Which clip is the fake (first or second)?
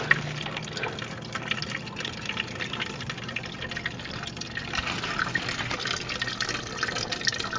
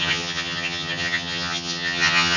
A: second